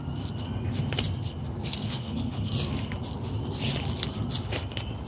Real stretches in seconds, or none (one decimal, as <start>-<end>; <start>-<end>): 0.0-1.8; 2.5-5.1